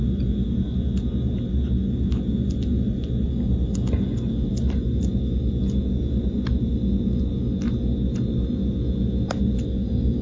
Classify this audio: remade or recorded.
recorded